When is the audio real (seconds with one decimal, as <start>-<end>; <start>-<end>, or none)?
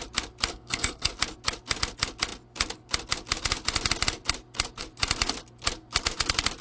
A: 0.0-0.5; 1.1-6.6